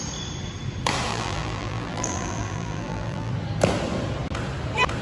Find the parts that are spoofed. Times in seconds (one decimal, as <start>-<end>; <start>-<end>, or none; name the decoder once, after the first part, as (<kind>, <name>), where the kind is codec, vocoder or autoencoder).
1.1-3.3 (vocoder, BigVGAN v2)